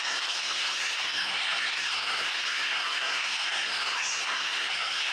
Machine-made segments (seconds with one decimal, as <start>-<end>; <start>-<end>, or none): 0.0-5.1